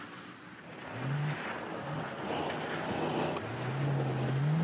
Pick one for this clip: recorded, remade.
recorded